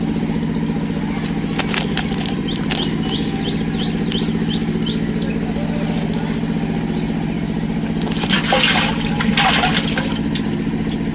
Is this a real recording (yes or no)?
yes